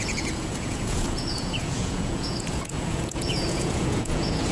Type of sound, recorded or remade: remade